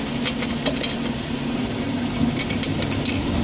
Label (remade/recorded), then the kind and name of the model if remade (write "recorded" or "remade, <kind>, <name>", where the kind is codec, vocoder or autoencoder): recorded